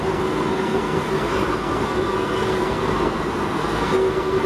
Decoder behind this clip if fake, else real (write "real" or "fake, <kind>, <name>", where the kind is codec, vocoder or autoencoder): fake, codec, SNAC